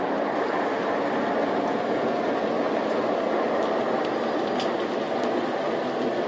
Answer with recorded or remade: recorded